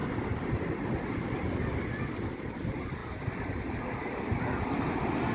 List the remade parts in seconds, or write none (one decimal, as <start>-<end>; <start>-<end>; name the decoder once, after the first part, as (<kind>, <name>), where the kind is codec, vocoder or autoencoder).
none

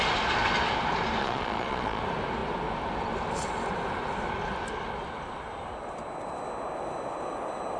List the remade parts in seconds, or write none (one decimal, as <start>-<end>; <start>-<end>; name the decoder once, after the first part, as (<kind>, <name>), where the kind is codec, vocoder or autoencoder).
1.2-2.0 (vocoder, Vocos)

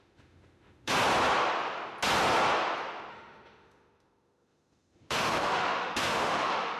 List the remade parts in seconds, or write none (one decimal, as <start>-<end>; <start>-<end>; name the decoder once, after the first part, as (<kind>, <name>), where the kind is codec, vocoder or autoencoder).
0.0-0.9 (autoencoder, DAC-VAE); 3.1-6.8

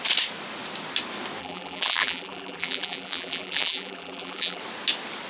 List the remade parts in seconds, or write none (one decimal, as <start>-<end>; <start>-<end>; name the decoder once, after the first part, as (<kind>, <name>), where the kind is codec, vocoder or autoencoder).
1.4-4.6 (vocoder, BigVGAN v2)

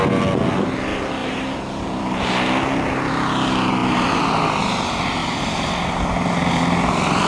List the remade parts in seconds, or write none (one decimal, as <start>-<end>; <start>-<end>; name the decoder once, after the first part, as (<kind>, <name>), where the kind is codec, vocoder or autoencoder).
1.2-2.3 (vocoder, BigVGAN v2); 5.2-5.7

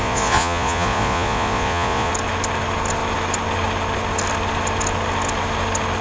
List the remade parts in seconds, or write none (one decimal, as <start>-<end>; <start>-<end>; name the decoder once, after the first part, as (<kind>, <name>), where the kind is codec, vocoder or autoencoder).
0.0-2.1 (vocoder, Vocos)

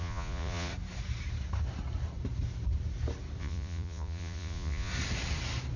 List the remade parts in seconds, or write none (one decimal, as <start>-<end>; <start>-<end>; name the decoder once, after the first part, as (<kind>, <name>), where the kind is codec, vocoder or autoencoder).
0.0-0.7 (vocoder, Vocos); 3.4-4.9